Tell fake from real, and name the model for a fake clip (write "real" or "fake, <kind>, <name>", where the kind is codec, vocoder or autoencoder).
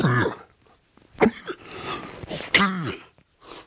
real